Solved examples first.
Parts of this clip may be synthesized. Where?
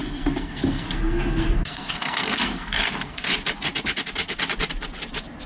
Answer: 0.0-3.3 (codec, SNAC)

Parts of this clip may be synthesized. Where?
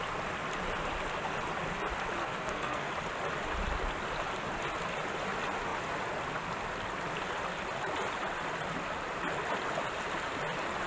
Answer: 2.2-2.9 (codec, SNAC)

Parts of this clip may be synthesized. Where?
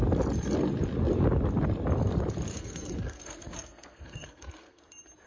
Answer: 2.5-4.8 (codec, SNAC)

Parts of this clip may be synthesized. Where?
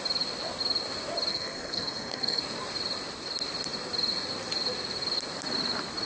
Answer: 1.3-2.4 (codec, SNAC)